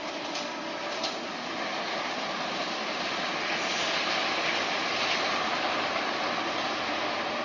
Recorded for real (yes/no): yes